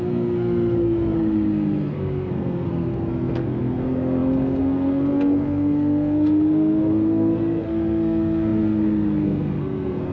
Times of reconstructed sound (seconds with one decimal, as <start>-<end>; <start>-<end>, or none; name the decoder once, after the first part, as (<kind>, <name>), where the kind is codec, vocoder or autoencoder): 0.0-10.1 (codec, SNAC)